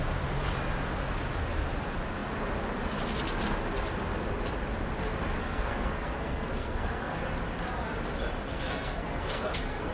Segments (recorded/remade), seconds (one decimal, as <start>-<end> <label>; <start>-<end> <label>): 0.0-5.4 recorded; 5.4-7.2 remade; 7.2-8.5 recorded; 8.5-9.9 remade